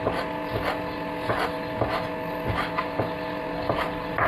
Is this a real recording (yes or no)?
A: yes